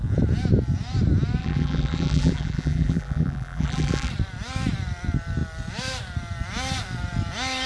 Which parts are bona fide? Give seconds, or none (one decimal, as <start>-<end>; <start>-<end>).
0.0-1.4; 4.1-7.7